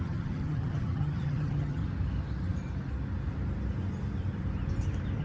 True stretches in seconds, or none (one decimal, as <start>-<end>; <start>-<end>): 1.8-5.2